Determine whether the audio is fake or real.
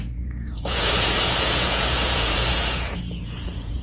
fake